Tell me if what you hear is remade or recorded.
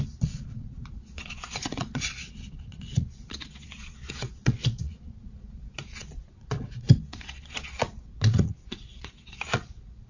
remade